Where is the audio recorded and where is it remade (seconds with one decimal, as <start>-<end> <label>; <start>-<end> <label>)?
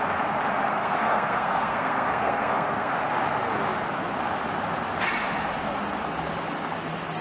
0.0-0.7 recorded; 0.7-2.9 remade; 2.9-7.2 recorded